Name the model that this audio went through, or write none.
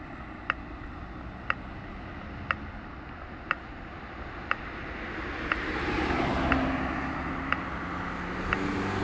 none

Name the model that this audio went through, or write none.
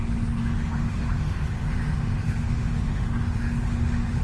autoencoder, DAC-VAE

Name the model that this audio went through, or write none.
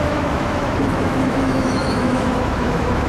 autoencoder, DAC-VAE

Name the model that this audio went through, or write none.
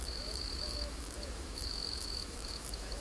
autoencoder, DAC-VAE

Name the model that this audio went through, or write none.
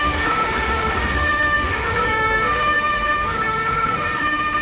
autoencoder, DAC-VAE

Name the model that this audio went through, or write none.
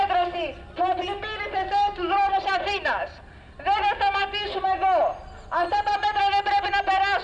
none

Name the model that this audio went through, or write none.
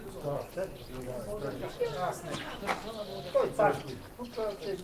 none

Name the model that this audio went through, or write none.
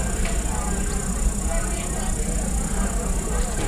none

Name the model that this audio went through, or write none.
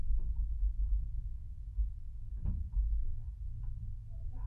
none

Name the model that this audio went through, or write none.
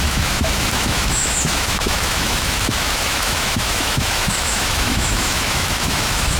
autoencoder, DAC-VAE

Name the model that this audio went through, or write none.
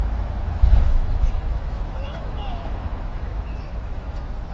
autoencoder, DAC-VAE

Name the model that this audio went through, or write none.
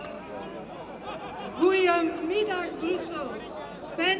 none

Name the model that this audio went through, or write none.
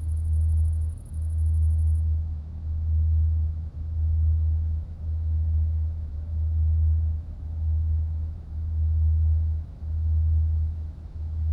autoencoder, DAC-VAE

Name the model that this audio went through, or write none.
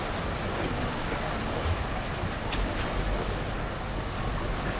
none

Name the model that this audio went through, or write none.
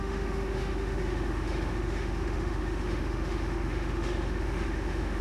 autoencoder, DAC-VAE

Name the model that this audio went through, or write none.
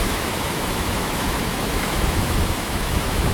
autoencoder, DAC-VAE